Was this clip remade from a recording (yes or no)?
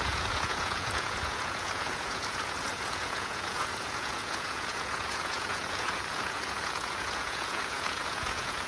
yes